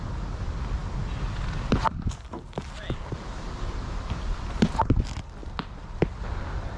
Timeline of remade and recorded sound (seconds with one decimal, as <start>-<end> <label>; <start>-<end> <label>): 0.0-6.8 recorded